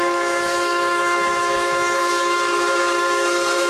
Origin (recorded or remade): remade